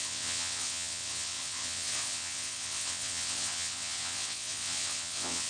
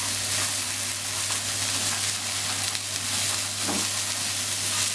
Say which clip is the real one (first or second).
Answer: second